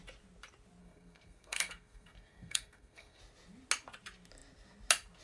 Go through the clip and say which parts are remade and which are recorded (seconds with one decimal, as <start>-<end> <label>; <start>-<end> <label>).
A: 0.0-0.8 recorded; 0.8-3.2 remade; 3.2-5.2 recorded